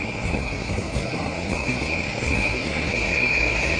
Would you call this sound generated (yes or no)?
yes